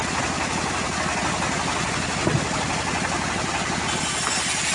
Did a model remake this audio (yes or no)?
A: no